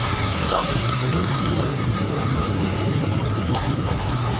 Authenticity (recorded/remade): remade